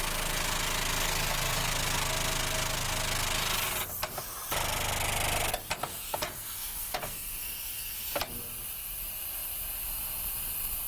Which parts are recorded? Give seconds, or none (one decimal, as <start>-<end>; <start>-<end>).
0.0-1.0; 1.7-5.9; 8.2-10.9